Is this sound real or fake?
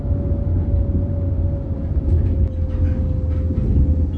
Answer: real